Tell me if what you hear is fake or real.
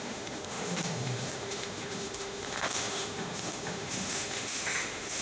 fake